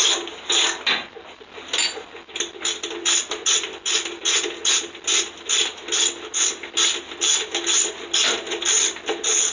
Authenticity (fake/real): real